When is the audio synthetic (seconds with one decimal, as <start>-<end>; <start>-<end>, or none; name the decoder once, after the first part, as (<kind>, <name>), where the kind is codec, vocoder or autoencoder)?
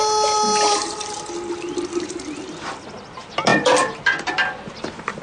none